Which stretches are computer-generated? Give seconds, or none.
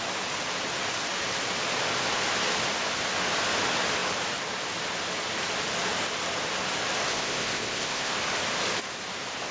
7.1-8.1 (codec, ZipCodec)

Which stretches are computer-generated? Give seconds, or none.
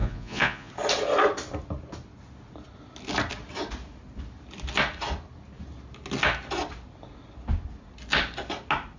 0.0-0.7 (vocoder, Vocos)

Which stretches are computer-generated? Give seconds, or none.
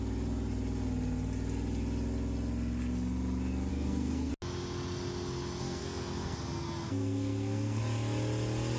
3.7-4.3 (codec, SNAC); 5.6-7.8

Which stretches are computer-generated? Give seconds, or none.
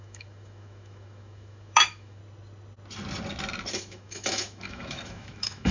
0.0-2.2 (autoencoder, DAC-VAE); 3.7-5.7